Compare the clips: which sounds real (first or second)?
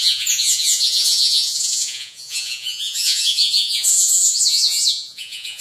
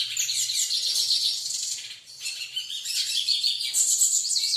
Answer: second